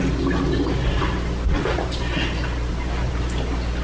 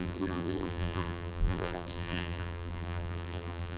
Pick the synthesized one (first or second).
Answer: second